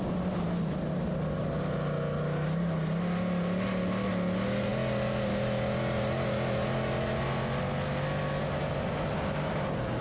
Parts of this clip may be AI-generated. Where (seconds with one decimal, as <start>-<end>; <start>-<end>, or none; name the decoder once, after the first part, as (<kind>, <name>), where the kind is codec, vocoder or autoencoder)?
none